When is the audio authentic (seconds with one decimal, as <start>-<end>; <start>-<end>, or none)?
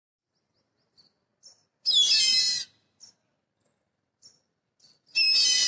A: 0.0-5.7